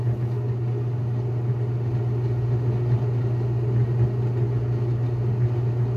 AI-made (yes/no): no